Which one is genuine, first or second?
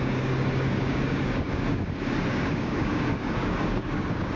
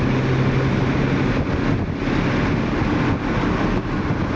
second